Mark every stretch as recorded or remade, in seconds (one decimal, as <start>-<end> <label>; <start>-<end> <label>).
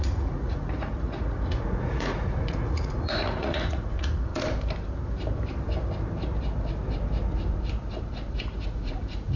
0.0-4.3 remade; 4.3-8.3 recorded; 8.3-9.4 remade